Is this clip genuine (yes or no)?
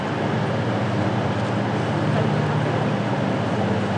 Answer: yes